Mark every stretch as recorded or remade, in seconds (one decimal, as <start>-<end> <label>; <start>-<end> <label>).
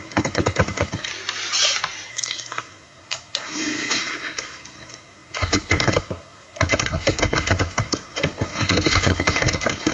0.0-1.1 remade; 1.1-2.1 recorded; 2.1-9.9 remade